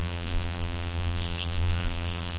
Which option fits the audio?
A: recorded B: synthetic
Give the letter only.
B